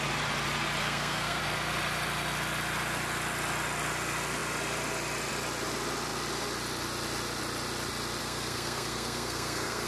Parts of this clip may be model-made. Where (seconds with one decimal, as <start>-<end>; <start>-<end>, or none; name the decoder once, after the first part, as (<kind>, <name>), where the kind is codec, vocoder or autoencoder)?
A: 0.8-1.4 (codec, SNAC); 8.2-9.9